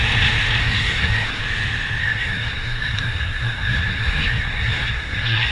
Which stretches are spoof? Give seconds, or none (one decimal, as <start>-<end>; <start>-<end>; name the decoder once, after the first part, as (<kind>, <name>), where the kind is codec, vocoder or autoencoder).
0.6-1.4 (codec, SNAC); 2.0-5.5